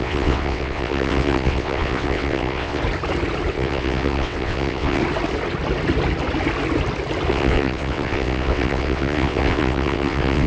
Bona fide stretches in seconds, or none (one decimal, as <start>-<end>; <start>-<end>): 2.8-3.5; 5.0-7.3